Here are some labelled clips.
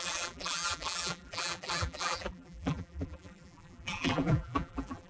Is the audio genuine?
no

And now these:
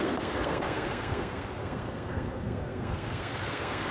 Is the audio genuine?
no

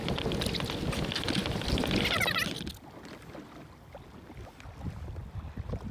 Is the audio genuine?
yes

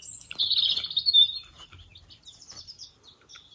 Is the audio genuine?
yes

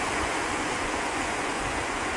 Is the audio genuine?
no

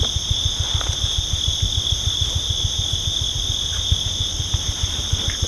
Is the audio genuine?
yes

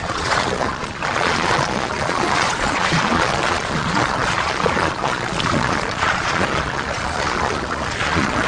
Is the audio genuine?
no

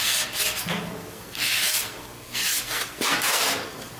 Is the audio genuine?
no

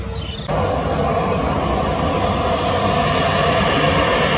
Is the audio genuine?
yes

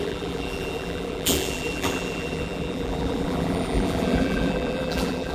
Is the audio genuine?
no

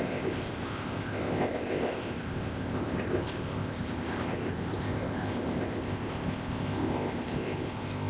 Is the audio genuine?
no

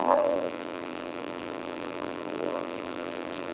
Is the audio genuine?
no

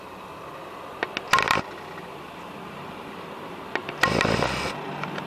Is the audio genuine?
yes